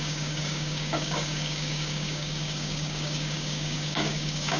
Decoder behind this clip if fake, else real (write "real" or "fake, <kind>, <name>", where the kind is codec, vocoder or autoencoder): fake, codec, DAC